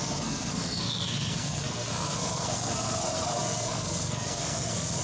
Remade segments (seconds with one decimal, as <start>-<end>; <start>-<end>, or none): 0.0-5.0